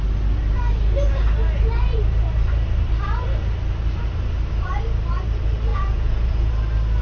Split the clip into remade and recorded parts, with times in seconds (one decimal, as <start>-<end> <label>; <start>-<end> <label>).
0.0-5.7 recorded; 5.7-6.5 remade; 6.5-7.0 recorded